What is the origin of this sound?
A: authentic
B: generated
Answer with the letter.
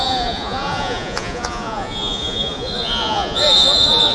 B